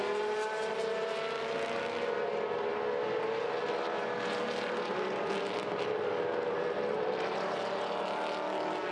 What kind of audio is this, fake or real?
real